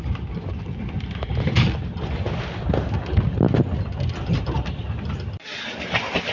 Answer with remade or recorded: recorded